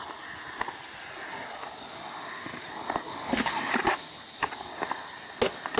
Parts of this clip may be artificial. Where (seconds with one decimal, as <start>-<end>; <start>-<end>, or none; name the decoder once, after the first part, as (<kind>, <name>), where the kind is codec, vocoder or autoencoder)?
1.9-2.7 (autoencoder, DAC-VAE); 3.1-3.7